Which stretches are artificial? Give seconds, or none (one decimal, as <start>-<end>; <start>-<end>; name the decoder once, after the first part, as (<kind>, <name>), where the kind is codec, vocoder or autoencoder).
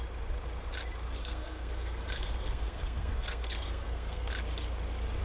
1.2-4.3 (codec, SNAC)